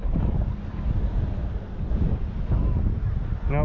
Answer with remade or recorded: recorded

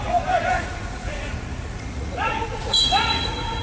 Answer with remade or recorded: remade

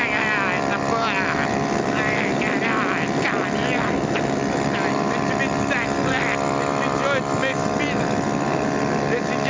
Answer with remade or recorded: recorded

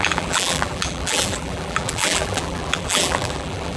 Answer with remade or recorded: remade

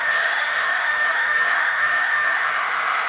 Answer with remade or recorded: remade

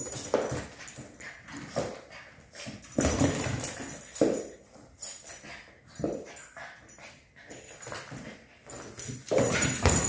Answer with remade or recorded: recorded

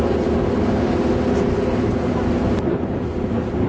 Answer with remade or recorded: recorded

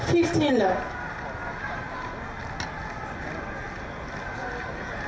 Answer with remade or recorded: recorded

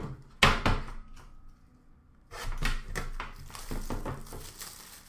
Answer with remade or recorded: recorded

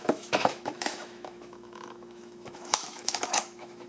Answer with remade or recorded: remade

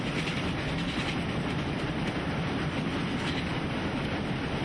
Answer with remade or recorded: recorded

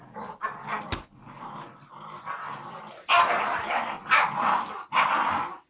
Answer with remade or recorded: recorded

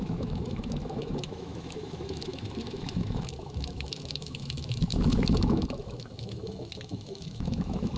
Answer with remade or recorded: remade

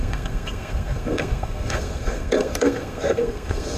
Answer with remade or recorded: remade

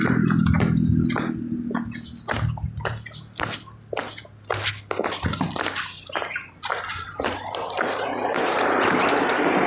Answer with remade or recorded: recorded